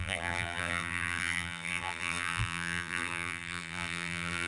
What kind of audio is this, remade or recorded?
remade